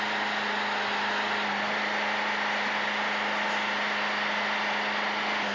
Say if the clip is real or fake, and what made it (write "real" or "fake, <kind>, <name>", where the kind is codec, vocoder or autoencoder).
real